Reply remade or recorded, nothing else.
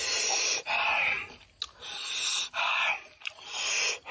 recorded